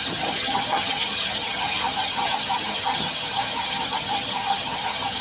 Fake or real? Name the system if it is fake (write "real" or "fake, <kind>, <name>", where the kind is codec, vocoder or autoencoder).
fake, vocoder, HiFi-GAN